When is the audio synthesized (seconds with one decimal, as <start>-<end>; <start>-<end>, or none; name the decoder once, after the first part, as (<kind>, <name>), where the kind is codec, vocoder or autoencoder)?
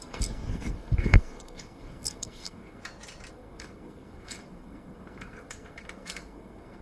0.0-2.8 (codec, SNAC); 3.3-6.8